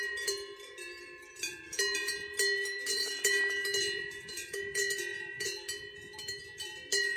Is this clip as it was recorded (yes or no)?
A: no